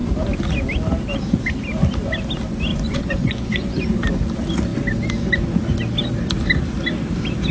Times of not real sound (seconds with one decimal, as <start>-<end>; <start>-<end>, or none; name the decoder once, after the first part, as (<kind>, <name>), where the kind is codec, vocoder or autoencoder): 2.7-3.8 (vocoder, Vocos)